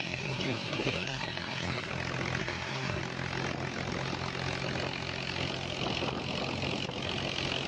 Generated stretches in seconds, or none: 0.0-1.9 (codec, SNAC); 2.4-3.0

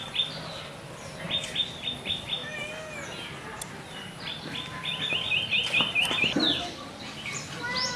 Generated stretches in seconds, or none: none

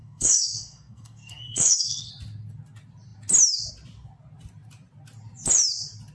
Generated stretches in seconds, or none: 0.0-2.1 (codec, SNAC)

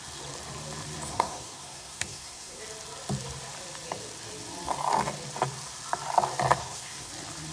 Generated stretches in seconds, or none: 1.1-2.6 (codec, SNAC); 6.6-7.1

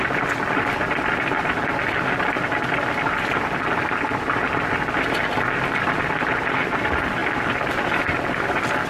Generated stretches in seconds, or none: none